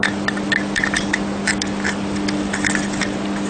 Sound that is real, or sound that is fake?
real